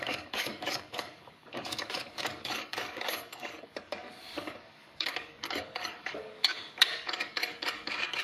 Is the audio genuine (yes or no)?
no